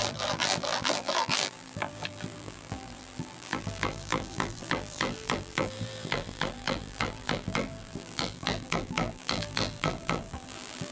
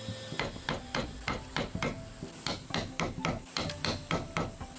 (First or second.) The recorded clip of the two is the second